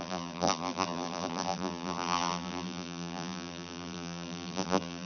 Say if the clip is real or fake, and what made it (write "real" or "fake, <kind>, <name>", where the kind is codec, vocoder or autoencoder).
fake, vocoder, BigVGAN v2